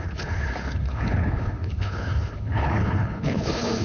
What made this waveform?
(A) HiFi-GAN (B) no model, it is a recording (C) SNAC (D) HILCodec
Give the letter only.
D